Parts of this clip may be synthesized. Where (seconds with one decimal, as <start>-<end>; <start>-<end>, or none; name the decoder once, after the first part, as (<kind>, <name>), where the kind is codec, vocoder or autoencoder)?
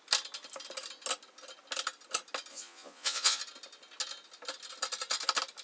2.5-3.4 (vocoder, Vocos)